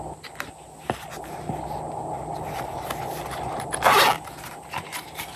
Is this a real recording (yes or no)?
yes